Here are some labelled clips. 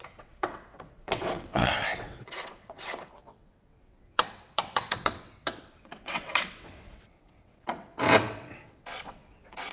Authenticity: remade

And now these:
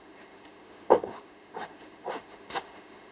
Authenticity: remade